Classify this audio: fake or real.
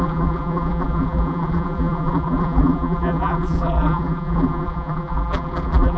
fake